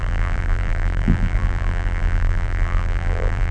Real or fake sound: fake